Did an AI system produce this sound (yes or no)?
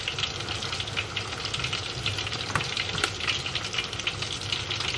no